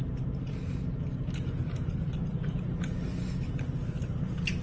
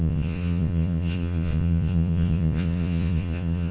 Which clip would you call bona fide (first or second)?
first